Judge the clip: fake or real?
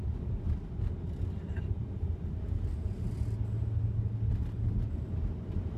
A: real